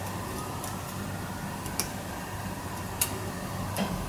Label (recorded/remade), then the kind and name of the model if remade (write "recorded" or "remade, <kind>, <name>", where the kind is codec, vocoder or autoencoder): recorded